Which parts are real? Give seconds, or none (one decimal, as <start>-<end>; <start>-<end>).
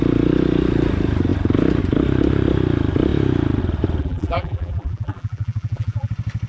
0.0-4.0; 6.1-6.5